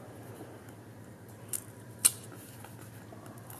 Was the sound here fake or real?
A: real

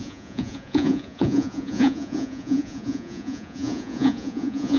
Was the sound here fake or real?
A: fake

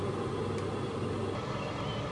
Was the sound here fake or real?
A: real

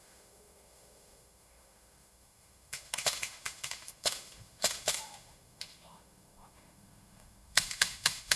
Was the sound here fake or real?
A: fake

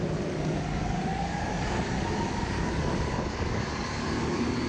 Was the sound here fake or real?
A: fake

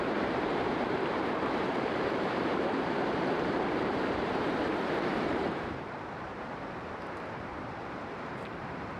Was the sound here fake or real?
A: fake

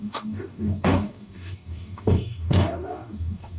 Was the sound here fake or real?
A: fake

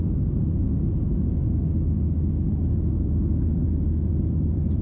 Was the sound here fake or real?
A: real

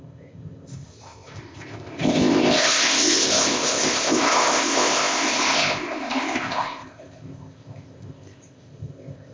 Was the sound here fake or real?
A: fake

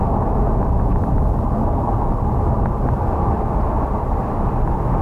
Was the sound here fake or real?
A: real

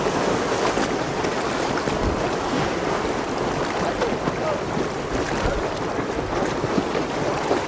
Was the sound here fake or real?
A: fake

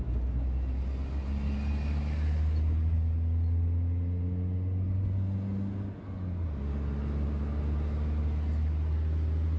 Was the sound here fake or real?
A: real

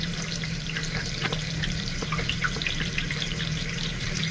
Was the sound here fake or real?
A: fake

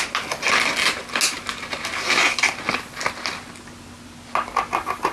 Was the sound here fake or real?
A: real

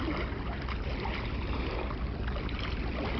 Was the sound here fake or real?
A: real